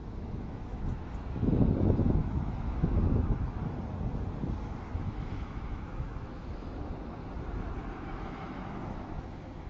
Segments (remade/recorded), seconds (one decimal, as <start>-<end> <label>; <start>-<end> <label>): 0.0-3.6 remade; 3.6-4.6 recorded; 4.6-7.2 remade; 7.2-7.9 recorded; 7.9-9.7 remade